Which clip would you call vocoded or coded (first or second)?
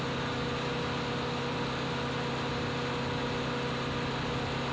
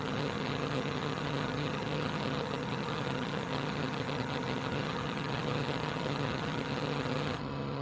second